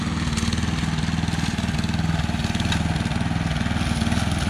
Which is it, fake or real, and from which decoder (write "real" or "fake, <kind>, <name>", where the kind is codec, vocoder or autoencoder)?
real